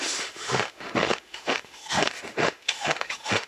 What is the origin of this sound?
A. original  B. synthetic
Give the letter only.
B